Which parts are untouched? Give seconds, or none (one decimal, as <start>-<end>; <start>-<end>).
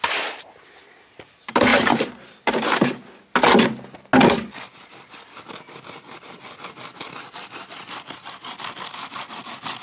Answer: 0.0-1.7; 2.5-9.8